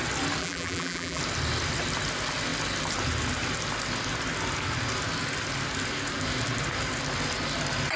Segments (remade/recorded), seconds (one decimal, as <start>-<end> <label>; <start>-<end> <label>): 0.0-0.4 recorded; 0.4-1.2 remade; 1.2-8.0 recorded